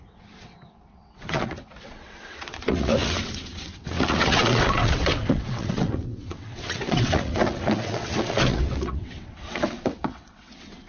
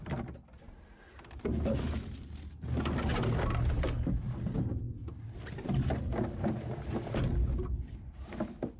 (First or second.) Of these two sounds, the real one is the second